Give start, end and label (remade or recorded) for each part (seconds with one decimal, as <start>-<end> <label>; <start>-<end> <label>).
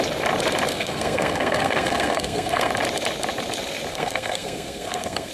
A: 0.0-0.7 recorded; 0.7-2.7 remade; 2.7-3.9 recorded; 3.9-5.3 remade